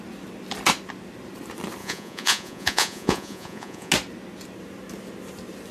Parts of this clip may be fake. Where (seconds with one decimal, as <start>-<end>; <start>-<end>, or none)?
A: 1.8-3.9